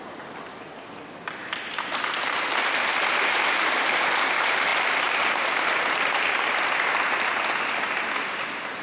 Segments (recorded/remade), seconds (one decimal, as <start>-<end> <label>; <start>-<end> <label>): 0.0-8.8 recorded